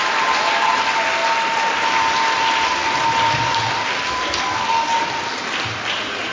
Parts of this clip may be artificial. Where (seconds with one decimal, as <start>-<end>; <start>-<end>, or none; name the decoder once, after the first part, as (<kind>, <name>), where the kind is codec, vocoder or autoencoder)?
none